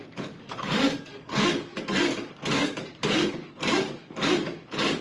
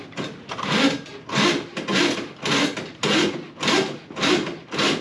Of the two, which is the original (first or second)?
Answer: second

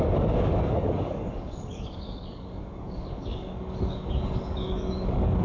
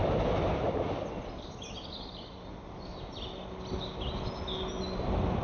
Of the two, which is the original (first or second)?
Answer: second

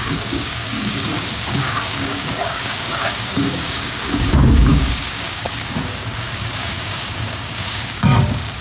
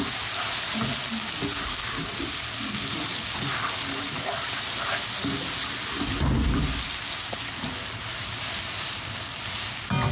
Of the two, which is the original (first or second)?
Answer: second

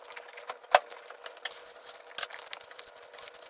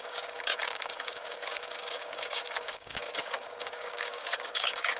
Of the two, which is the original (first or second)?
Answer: first